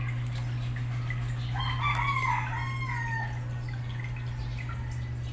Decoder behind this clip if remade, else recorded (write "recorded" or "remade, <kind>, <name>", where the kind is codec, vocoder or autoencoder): recorded